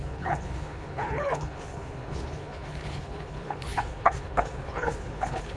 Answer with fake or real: fake